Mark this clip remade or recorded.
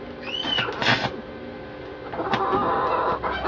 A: recorded